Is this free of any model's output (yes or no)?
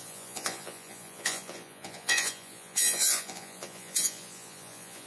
no